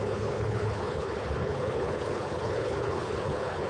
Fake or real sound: fake